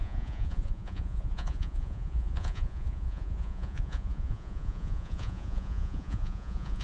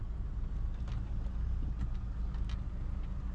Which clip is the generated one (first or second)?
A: first